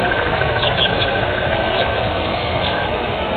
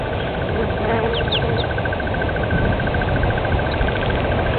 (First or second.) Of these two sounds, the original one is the second